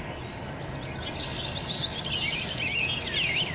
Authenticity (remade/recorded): recorded